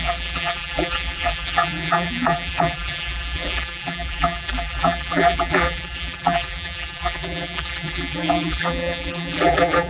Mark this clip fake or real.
fake